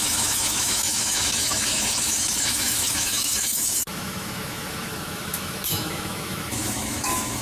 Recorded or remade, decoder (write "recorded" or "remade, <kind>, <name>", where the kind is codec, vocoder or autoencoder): remade, autoencoder, DAC-VAE